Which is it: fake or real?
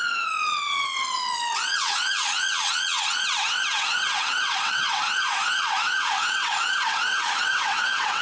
fake